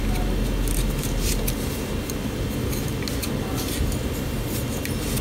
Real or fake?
real